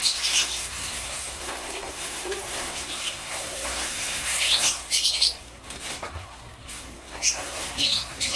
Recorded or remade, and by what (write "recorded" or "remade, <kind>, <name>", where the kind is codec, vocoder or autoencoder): remade, codec, SNAC